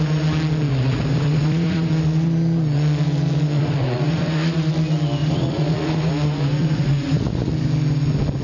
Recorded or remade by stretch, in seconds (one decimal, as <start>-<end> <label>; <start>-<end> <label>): 0.0-0.7 recorded; 0.7-1.9 remade; 1.9-3.6 recorded; 3.6-4.7 remade; 4.7-5.2 recorded; 5.2-6.1 remade; 6.1-6.6 recorded; 6.6-7.5 remade; 7.5-8.4 recorded